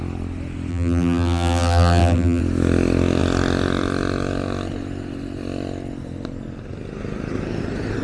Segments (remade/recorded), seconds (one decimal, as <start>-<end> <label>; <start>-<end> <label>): 0.0-0.7 recorded; 0.7-2.4 remade; 2.4-8.0 recorded